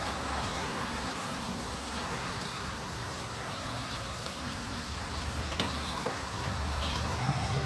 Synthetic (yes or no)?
yes